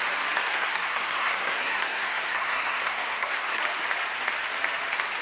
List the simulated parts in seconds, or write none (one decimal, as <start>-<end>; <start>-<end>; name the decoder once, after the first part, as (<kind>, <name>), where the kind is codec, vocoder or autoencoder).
0.5-3.6 (codec, SNAC)